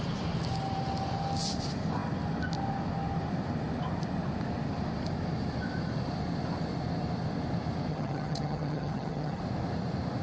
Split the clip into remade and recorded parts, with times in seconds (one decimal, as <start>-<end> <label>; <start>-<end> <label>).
0.0-7.9 recorded; 7.9-9.4 remade; 9.4-10.2 recorded